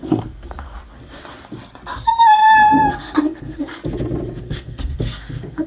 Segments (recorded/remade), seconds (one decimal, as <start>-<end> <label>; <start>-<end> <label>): 0.0-0.8 remade; 0.8-2.1 recorded; 2.1-3.8 remade; 3.8-4.4 recorded; 4.4-5.7 remade